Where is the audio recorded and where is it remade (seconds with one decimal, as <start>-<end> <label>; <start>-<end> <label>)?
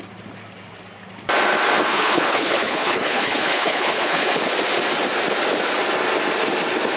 0.0-1.9 recorded; 1.9-4.3 remade; 4.3-7.0 recorded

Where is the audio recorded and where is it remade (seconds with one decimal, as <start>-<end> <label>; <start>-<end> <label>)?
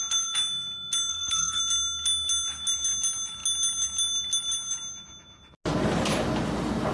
0.0-1.1 recorded; 1.1-1.6 remade; 1.6-6.9 recorded